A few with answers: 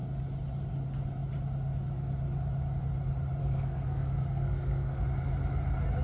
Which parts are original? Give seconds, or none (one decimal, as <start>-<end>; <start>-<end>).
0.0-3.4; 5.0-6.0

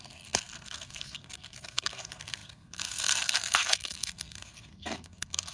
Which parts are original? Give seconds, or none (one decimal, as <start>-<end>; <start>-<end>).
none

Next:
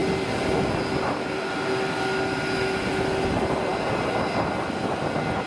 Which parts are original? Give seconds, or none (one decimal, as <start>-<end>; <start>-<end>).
0.0-5.5

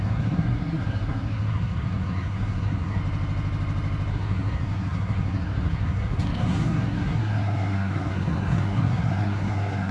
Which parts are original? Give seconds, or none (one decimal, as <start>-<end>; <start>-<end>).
3.0-4.1

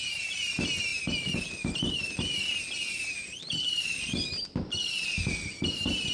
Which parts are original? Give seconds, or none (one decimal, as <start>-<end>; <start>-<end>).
0.0-6.1